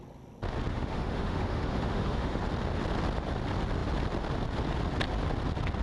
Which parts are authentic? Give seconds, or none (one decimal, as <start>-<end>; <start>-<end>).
0.0-0.7; 2.4-5.8